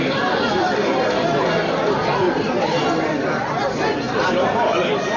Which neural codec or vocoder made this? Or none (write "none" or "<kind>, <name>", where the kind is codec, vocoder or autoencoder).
none